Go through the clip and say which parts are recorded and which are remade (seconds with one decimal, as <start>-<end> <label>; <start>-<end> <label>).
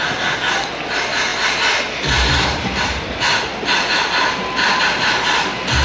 0.0-5.8 recorded